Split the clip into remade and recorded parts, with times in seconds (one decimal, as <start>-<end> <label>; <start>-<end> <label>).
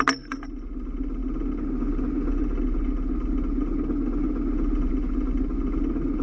0.0-6.2 recorded